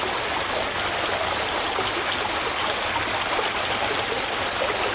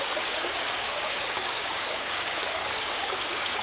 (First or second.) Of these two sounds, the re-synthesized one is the second